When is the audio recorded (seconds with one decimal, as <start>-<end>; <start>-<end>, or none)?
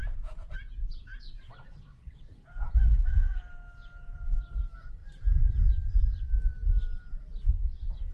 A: 3.4-8.1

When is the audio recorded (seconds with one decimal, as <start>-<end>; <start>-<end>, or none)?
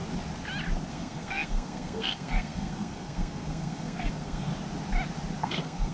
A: 0.0-0.9; 4.5-5.4